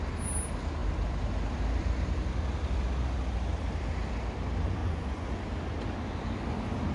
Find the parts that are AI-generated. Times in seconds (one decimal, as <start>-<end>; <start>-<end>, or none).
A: 4.8-5.3